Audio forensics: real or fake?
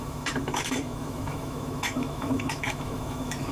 fake